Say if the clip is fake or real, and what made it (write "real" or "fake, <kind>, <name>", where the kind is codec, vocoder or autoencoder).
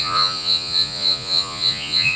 fake, vocoder, Vocos